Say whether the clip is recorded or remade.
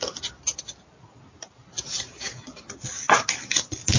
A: recorded